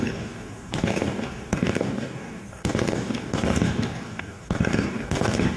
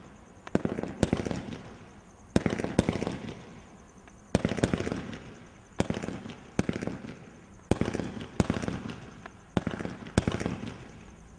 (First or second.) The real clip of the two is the second